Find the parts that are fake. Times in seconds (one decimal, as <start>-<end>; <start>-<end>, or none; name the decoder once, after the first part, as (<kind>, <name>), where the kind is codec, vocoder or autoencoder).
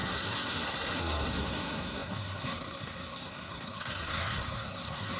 0.0-5.2 (codec, SNAC)